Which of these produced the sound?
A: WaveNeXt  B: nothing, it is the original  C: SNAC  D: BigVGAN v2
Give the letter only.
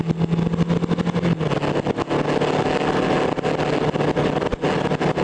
B